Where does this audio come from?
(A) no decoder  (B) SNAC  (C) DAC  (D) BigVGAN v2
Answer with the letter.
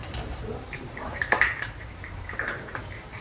D